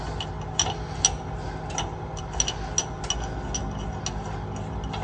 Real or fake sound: real